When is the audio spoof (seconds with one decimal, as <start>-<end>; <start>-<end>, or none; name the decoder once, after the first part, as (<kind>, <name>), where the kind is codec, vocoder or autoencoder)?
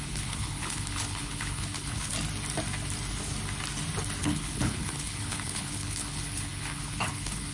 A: 0.0-2.1 (codec, HILCodec); 4.2-7.5